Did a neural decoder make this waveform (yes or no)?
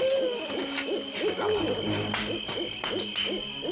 no